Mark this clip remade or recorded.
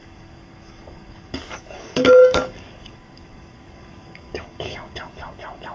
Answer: remade